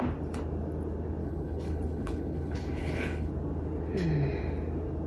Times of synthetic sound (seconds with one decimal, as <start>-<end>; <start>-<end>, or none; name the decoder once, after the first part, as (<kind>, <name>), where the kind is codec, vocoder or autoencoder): 1.2-3.3 (codec, HILCodec)